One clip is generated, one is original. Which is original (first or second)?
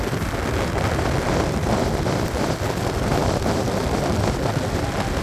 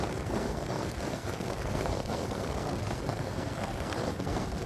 first